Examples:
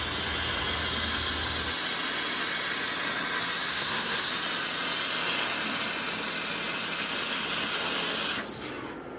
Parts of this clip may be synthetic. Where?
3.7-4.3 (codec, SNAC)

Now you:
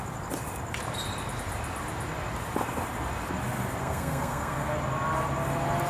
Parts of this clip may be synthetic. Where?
3.8-4.7 (codec, SNAC)

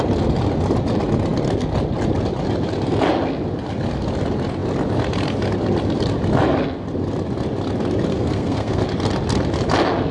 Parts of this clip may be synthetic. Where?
8.1-8.8 (codec, SNAC)

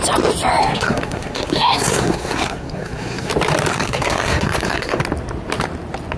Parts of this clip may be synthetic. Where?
0.6-3.3 (codec, SNAC); 3.7-5.0